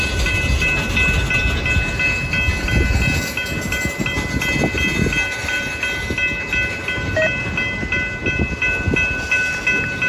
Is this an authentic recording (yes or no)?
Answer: yes